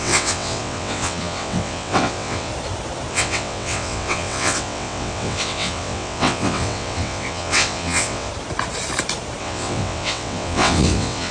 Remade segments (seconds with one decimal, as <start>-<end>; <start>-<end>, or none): 0.0-2.5; 3.1-8.3; 9.4-11.3